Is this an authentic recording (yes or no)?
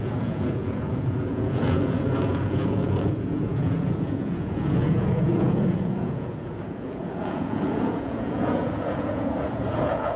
no